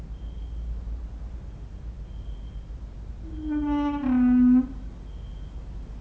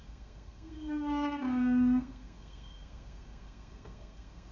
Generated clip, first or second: second